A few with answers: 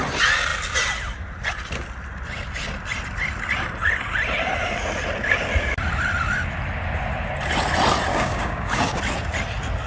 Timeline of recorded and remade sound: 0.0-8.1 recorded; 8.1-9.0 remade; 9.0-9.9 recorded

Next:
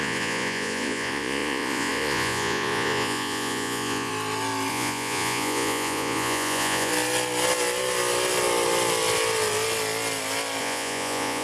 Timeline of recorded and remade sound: 0.0-4.1 remade; 4.1-4.7 recorded; 4.7-6.9 remade; 6.9-10.6 recorded; 10.6-11.4 remade

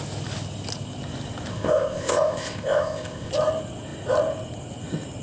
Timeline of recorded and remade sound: 0.0-1.5 recorded; 1.5-3.3 remade; 3.3-5.2 recorded

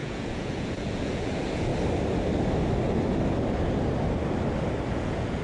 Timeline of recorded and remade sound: 0.0-1.7 remade; 1.7-4.9 recorded; 4.9-5.4 remade